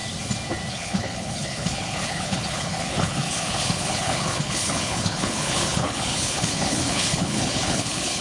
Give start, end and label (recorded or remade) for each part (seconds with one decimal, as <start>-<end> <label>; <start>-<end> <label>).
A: 0.0-0.7 recorded; 0.7-8.2 remade